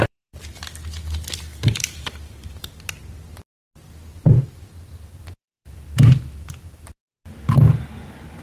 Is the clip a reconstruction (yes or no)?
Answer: yes